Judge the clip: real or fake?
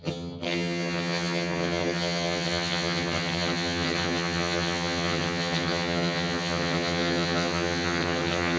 fake